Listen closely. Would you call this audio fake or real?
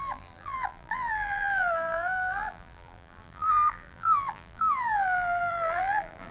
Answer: fake